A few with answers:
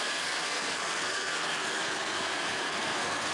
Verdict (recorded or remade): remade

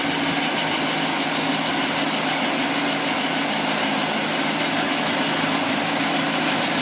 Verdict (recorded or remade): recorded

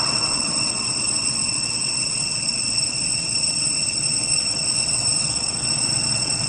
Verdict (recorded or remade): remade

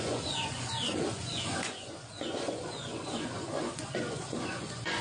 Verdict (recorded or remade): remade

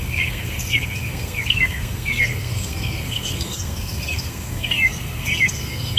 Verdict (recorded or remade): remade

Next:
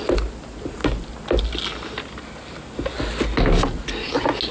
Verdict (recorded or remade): recorded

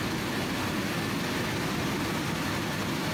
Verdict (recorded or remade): recorded